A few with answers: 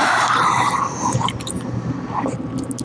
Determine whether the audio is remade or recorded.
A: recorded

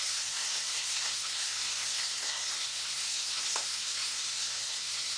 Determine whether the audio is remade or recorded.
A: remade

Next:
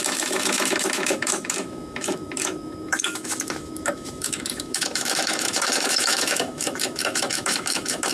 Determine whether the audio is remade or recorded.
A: remade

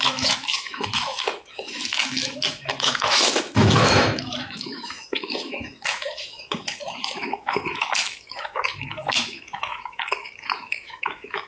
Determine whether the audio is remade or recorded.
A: remade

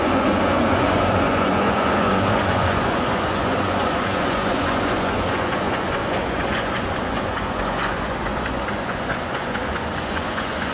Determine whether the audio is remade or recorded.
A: remade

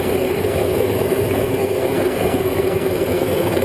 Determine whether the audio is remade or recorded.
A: remade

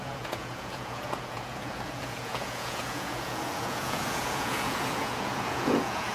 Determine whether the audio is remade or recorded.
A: remade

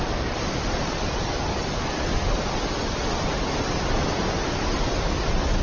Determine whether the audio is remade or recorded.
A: recorded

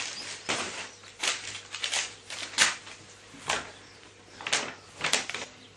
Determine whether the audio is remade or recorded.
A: recorded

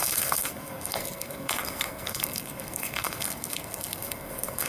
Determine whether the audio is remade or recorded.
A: remade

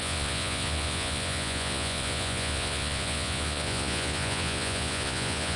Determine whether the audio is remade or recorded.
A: remade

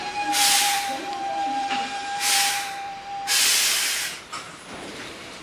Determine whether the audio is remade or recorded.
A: remade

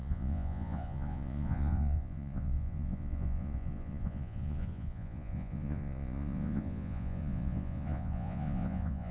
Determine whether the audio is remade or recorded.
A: remade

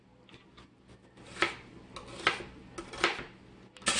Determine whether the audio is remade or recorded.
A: recorded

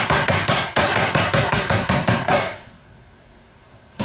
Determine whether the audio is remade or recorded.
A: remade